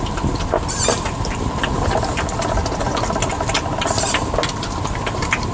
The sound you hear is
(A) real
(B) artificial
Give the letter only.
A